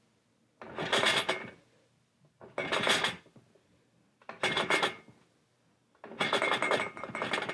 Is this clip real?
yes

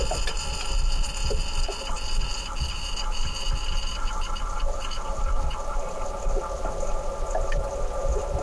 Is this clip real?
yes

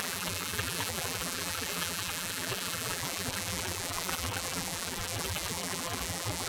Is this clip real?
no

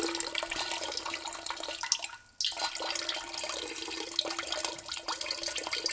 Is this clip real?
yes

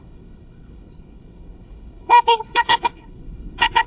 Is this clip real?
no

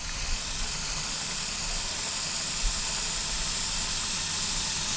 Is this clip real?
yes